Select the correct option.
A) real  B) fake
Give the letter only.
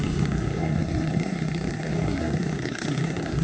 B